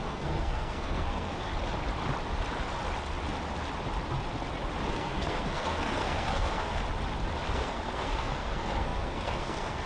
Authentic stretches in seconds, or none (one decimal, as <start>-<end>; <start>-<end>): 1.5-4.9; 6.8-7.5